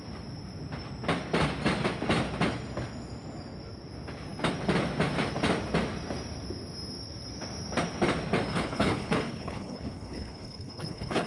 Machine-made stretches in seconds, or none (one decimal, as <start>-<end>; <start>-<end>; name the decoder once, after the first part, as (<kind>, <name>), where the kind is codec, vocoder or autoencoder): 8.5-11.3 (codec, HILCodec)